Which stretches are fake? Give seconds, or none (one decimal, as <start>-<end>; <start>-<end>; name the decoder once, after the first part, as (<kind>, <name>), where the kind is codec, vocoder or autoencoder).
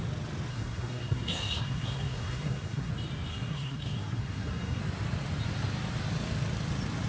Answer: 0.5-2.9 (codec, SNAC); 3.3-4.8